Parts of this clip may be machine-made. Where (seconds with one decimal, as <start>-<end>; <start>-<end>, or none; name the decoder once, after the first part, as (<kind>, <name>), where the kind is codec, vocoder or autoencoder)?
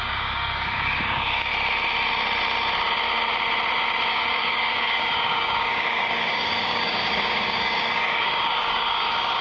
0.0-1.5 (codec, DAC); 4.1-9.4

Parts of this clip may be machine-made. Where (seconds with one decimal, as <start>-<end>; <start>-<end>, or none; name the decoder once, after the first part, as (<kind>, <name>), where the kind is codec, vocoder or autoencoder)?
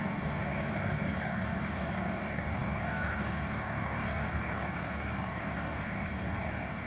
0.0-6.9 (codec, DAC)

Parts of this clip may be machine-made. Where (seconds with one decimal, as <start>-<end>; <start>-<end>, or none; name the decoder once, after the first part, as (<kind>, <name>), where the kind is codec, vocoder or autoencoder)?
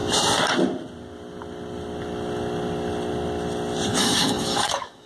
3.9-5.1 (codec, DAC)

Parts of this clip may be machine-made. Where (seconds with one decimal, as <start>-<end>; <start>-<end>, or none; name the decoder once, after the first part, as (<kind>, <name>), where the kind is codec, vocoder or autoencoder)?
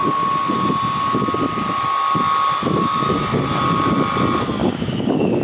4.6-5.4 (codec, DAC)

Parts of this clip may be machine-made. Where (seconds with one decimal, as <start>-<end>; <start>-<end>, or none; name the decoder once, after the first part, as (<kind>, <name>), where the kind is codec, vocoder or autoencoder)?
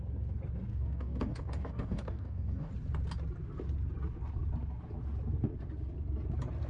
0.7-2.7 (codec, DAC)